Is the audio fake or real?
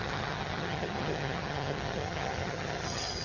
fake